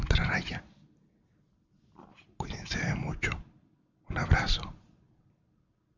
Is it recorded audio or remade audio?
recorded